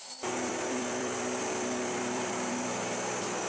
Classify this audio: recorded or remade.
remade